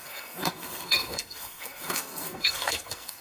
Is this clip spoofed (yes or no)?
yes